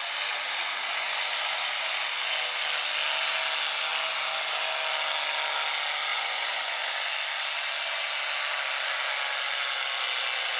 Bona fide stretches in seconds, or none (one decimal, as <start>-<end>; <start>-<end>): 0.0-6.1; 6.9-10.6